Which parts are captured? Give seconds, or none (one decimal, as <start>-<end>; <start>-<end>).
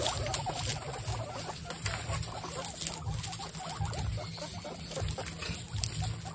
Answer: 0.0-6.3